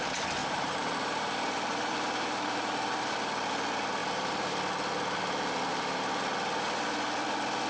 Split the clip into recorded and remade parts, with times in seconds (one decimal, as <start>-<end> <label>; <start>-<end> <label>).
0.0-0.4 recorded; 0.4-3.2 remade; 3.2-4.0 recorded; 4.0-4.5 remade; 4.5-5.7 recorded; 5.7-6.2 remade; 6.2-7.7 recorded